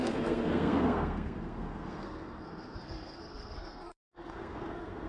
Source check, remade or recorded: remade